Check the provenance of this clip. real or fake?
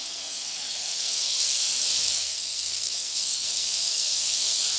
fake